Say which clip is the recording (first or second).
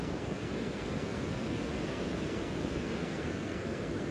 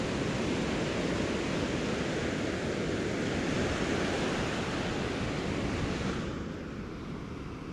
second